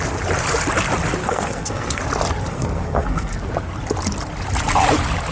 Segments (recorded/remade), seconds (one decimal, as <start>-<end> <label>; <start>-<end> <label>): 0.0-1.2 recorded; 1.2-2.0 remade; 2.0-2.5 recorded; 2.5-3.5 remade; 3.5-5.3 recorded